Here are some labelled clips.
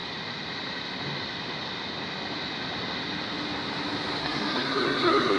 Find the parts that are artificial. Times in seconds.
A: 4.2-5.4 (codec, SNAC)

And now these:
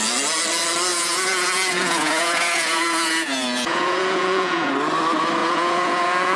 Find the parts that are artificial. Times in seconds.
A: 0.9-4.7 (vocoder, Vocos); 5.4-6.4

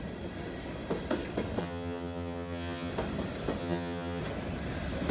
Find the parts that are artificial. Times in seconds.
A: 1.6-2.9 (vocoder, HiFi-GAN); 3.6-4.2

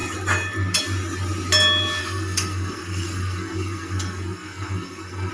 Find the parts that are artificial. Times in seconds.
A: 2.0-5.3 (codec, SNAC)

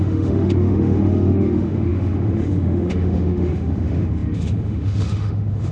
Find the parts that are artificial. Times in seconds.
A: 0.0-5.7 (autoencoder, DAC-VAE)

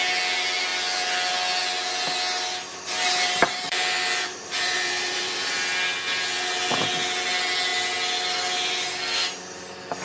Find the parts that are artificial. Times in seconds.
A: 2.7-5.6 (vocoder, BigVGAN v2)

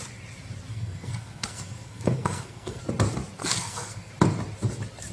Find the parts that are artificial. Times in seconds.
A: 0.7-2.8 (codec, SNAC); 3.4-4.1

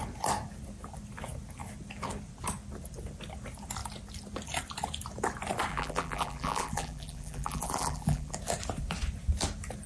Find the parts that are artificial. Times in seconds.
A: 5.7-8.3 (vocoder, BigVGAN v2)